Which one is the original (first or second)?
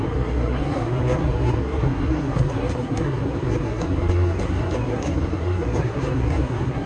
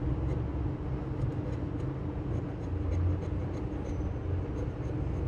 second